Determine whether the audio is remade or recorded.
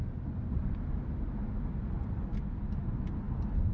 recorded